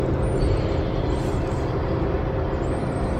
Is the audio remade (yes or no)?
no